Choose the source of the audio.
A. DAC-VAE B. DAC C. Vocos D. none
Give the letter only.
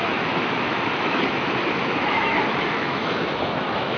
A